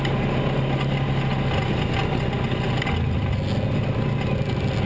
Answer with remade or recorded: recorded